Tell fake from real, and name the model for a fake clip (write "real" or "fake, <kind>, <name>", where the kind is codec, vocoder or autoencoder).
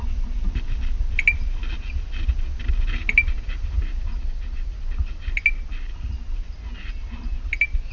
real